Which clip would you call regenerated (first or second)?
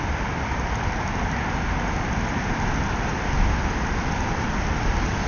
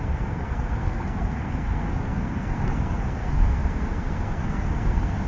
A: second